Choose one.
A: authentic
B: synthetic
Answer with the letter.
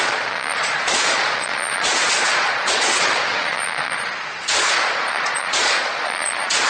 B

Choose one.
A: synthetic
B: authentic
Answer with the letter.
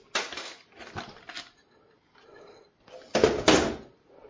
B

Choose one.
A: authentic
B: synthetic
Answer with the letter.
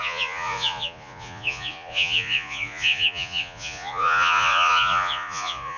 B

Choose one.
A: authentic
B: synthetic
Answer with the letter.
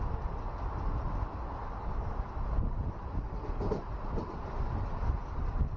A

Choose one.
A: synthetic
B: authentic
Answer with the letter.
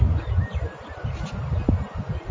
B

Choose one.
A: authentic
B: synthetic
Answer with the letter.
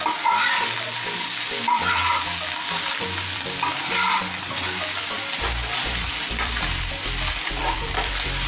B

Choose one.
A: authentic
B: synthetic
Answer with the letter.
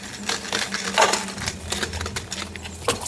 A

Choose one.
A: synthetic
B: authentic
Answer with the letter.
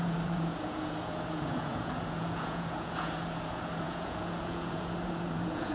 A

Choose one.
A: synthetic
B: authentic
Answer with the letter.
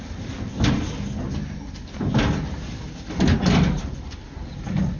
B